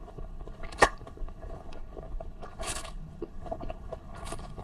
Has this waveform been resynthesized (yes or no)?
yes